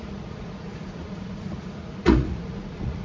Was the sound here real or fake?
fake